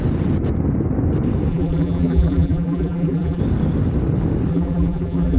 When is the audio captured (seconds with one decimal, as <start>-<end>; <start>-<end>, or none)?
0.0-1.5; 3.4-4.5